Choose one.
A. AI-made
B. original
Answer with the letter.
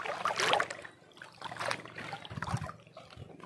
B